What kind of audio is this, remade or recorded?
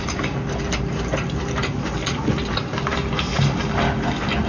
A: recorded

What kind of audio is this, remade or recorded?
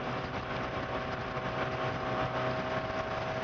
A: recorded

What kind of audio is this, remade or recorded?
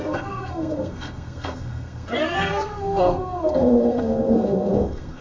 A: remade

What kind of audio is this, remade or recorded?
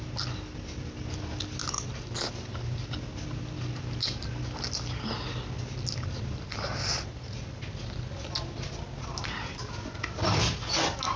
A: recorded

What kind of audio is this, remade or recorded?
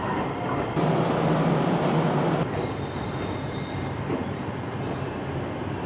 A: recorded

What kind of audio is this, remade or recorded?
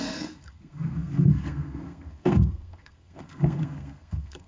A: remade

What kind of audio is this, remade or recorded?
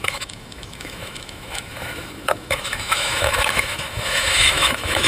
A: remade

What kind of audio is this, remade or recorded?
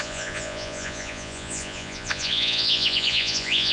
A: remade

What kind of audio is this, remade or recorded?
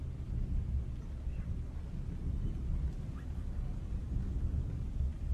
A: recorded